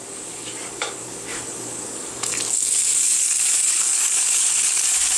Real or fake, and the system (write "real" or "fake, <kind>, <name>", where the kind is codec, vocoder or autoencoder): fake, codec, DAC